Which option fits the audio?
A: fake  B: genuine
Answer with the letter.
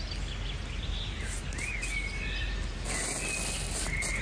B